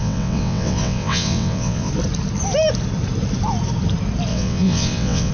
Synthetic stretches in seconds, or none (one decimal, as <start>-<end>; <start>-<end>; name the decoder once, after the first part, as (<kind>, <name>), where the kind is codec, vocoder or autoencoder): 0.0-1.9 (vocoder, WaveNeXt); 4.3-5.3